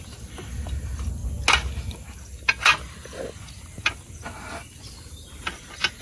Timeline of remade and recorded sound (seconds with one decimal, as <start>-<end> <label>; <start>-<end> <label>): 0.0-1.2 remade; 1.2-2.9 recorded; 2.9-6.0 remade